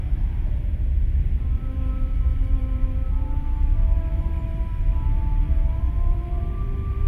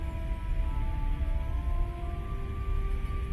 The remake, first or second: first